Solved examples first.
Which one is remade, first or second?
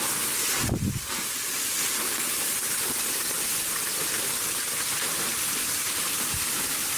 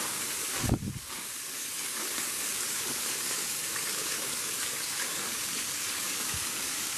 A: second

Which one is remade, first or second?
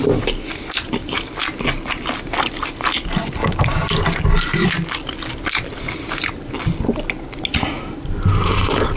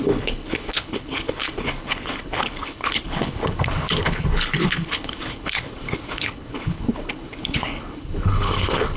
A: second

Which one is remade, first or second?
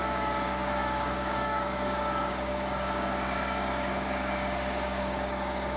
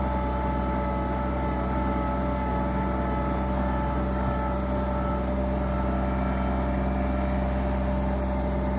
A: first